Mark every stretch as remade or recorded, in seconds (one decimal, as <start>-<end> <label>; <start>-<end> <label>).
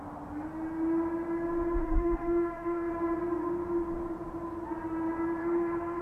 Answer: 0.0-1.8 recorded; 1.8-2.9 remade; 2.9-5.4 recorded; 5.4-6.0 remade